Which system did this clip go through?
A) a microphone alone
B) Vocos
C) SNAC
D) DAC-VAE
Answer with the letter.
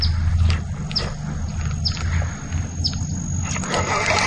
A